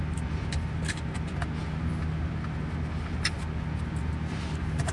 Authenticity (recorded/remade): recorded